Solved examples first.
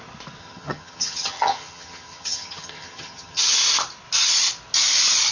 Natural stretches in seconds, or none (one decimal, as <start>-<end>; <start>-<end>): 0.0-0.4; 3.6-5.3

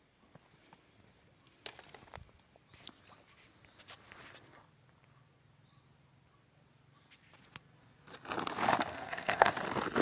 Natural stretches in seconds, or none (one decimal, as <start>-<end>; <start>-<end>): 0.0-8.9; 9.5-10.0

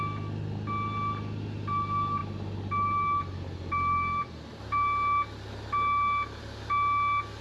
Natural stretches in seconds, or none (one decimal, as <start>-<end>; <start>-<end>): 0.0-7.4

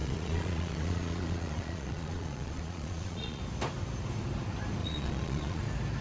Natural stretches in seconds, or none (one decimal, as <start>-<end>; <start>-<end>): 3.4-4.8; 5.6-6.0

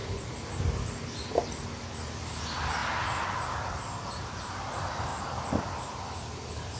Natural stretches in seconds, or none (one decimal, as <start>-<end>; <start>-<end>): 0.9-5.1

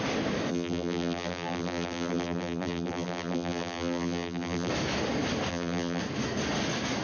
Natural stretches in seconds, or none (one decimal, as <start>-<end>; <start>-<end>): 0.0-0.5; 4.7-5.5; 6.0-7.0

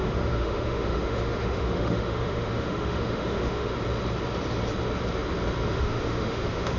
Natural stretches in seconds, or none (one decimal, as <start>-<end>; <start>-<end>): 3.7-5.7